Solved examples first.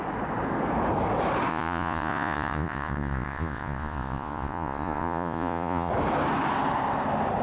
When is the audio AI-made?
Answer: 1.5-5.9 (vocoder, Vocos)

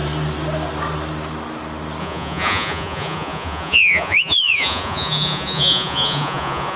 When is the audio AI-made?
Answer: 2.0-6.8 (vocoder, Vocos)

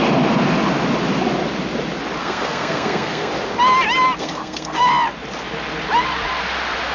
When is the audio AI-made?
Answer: 2.2-3.3 (codec, SNAC); 4.2-4.8

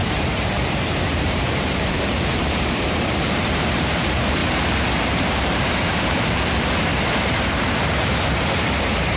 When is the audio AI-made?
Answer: 0.0-4.4 (vocoder, BigVGAN v2); 5.2-6.9; 7.5-9.2